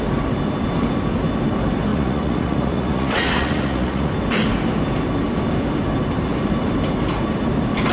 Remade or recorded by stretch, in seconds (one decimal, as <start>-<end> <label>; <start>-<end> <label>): 0.0-1.9 recorded; 1.9-4.1 remade; 4.1-7.9 recorded